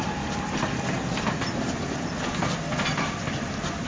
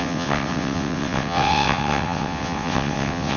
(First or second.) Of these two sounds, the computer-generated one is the second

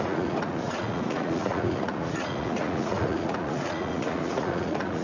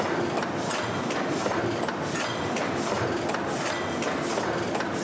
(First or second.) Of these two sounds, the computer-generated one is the first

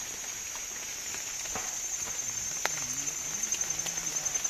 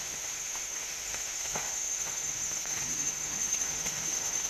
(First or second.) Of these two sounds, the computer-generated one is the second